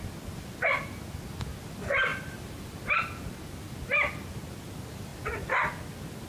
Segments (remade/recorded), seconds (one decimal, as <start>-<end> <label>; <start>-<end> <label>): 0.0-2.1 recorded; 2.1-3.0 remade; 3.0-6.3 recorded